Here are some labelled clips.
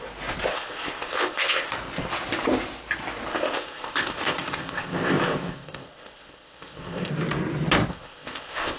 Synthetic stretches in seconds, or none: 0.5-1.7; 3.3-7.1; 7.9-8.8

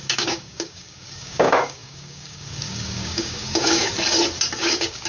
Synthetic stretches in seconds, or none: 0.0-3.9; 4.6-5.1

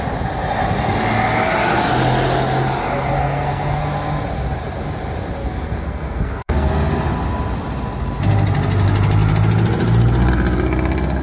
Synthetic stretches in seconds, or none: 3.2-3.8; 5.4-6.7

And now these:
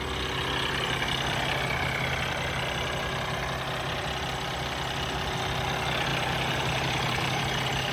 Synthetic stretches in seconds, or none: 6.1-7.4

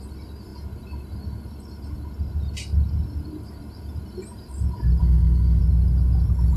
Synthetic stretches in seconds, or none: 5.0-5.6

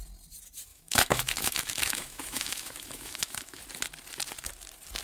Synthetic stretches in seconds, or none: 0.7-3.6